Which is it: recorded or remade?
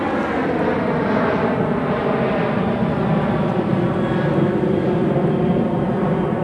recorded